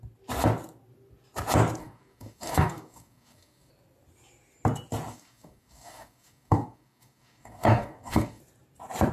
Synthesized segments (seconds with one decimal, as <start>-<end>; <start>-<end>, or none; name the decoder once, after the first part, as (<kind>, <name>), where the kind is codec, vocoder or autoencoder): 1.8-3.7 (codec, DAC); 5.1-8.4